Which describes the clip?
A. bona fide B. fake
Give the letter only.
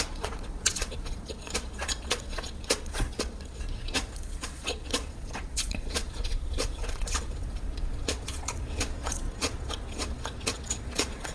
B